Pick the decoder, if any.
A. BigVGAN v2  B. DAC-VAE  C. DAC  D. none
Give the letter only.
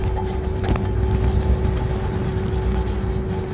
D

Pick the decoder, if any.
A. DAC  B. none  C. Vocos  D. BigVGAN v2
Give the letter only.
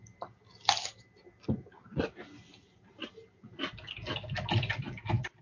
B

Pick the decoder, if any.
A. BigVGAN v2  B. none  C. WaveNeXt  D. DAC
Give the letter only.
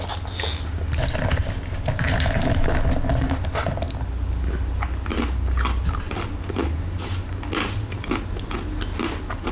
B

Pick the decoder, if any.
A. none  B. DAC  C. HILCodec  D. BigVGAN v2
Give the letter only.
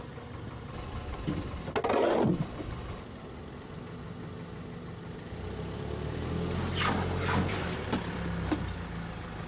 A